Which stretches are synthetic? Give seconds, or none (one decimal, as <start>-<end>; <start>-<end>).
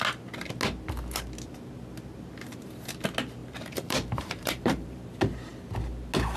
3.4-5.0